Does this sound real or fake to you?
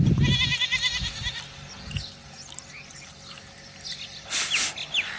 real